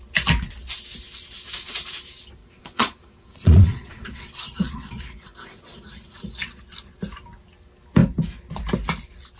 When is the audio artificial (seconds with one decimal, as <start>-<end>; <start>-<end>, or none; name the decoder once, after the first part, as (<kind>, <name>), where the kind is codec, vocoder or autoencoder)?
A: 2.4-6.6 (vocoder, Vocos)